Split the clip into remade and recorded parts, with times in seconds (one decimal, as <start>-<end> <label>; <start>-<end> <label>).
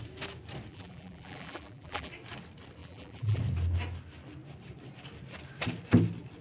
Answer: 0.0-0.7 recorded; 0.7-2.1 remade; 2.1-2.8 recorded; 2.8-3.4 remade; 3.4-6.4 recorded